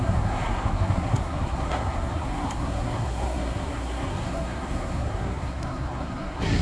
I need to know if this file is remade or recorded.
remade